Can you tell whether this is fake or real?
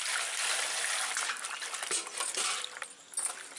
real